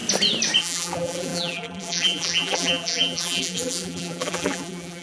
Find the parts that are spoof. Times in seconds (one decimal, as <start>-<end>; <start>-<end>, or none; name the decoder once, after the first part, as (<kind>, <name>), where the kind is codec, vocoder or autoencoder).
0.6-5.0 (vocoder, BigVGAN v2)